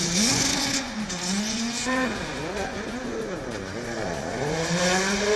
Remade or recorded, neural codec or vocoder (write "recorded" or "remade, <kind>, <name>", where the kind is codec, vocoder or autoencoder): remade, vocoder, Vocos